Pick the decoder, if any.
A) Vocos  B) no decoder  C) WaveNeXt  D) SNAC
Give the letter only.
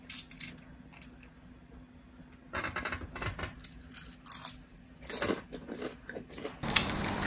B